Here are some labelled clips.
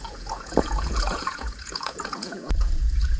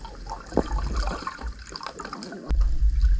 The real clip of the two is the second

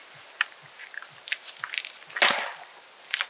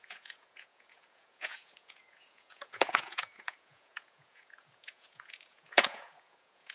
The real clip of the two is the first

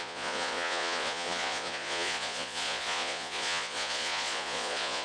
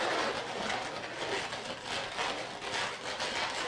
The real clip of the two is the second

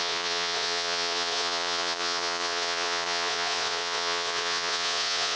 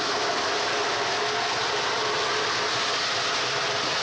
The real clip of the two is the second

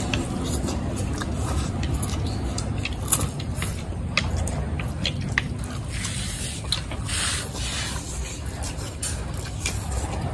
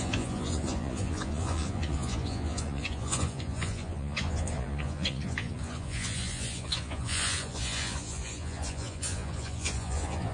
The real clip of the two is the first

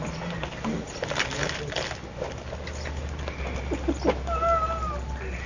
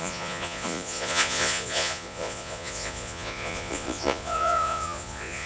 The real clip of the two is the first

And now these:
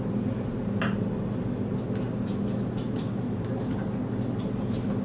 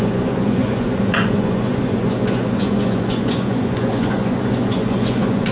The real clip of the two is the first